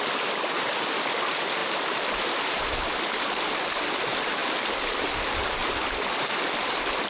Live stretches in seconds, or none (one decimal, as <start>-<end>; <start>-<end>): 0.0-4.4; 5.1-5.6; 6.1-7.1